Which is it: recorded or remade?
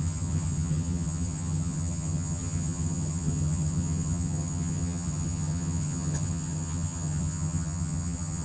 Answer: remade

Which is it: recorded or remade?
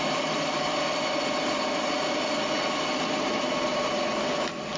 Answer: recorded